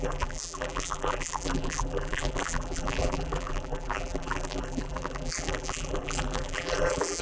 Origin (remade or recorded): remade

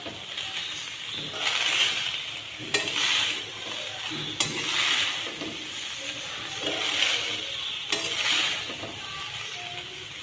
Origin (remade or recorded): recorded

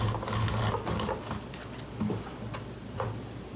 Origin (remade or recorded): recorded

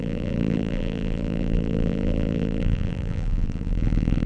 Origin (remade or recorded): remade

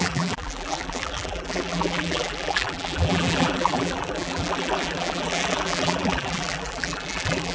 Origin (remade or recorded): remade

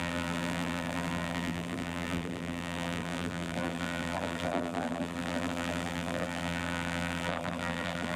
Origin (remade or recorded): remade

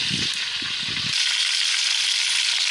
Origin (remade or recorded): recorded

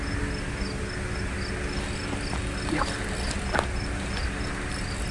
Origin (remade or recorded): recorded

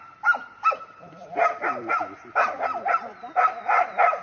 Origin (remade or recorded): remade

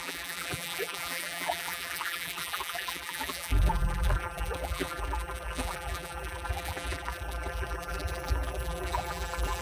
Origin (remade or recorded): remade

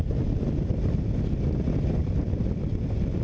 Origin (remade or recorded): remade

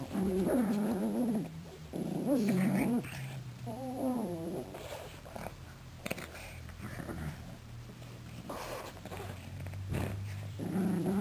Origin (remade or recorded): remade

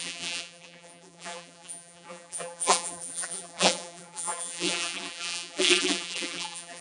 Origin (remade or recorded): remade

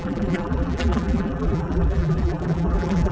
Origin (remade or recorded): remade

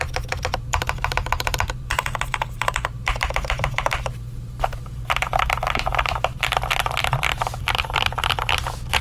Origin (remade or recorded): remade